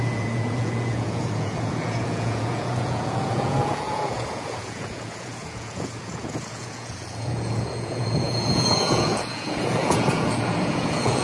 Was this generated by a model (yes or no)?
yes